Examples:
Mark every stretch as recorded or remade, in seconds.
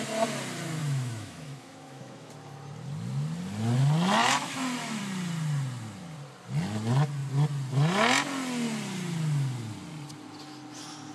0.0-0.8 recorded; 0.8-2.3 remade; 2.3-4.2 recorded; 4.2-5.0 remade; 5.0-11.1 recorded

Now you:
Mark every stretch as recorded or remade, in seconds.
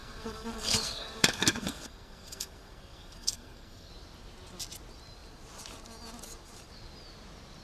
0.0-3.9 remade; 3.9-7.6 recorded